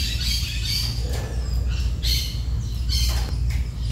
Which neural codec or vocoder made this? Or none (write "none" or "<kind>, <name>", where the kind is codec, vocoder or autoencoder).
none